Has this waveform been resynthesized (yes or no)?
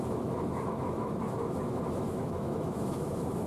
yes